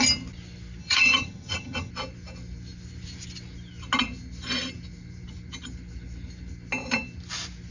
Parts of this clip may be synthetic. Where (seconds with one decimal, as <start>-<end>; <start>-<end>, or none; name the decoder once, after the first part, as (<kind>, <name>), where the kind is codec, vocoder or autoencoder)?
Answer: 0.8-1.9 (vocoder, HiFi-GAN)